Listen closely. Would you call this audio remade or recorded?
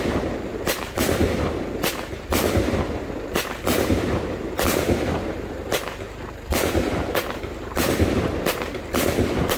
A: remade